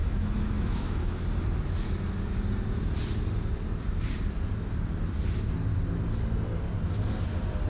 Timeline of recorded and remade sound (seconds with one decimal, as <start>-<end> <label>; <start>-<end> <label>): 0.0-1.2 remade; 1.2-7.7 recorded